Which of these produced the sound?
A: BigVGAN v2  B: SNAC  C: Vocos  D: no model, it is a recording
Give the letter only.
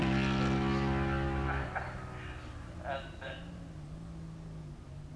D